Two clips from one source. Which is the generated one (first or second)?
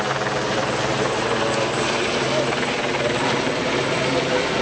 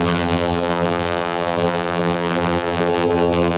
second